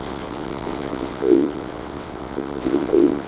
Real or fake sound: fake